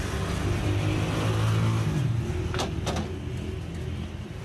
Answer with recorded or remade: recorded